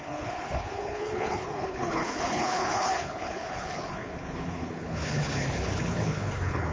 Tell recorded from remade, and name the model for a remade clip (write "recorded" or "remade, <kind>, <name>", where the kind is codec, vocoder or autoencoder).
remade, codec, HILCodec